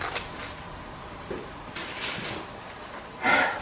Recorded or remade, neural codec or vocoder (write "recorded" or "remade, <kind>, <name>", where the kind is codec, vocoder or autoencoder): recorded